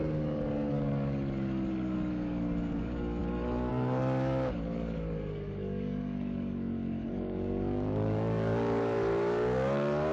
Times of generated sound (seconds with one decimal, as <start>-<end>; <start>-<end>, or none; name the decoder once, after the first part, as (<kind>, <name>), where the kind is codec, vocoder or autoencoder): 0.0-10.1 (codec, DAC)